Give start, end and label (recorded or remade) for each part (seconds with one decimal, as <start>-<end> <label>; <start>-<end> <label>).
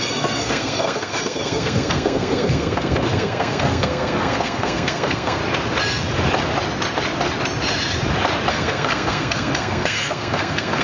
0.0-5.4 remade; 5.4-8.5 recorded; 8.5-10.8 remade